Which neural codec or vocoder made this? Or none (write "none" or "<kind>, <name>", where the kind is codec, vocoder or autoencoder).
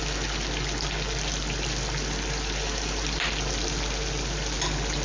none